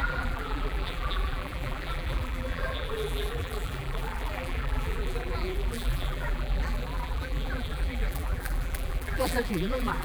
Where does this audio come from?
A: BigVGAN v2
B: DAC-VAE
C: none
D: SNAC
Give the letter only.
A